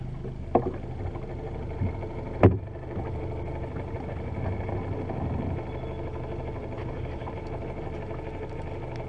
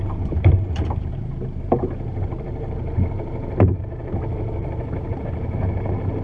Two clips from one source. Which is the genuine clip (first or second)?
first